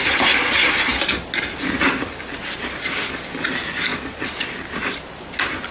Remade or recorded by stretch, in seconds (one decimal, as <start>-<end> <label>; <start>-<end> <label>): 0.0-5.7 recorded